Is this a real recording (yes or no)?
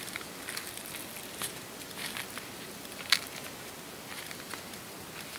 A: yes